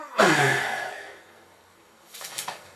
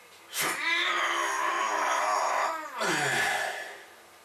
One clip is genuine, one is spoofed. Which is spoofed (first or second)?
first